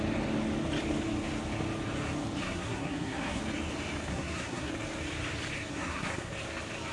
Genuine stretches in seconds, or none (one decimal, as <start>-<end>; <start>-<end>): 0.0-2.4; 3.4-4.1; 4.7-5.7; 6.3-6.9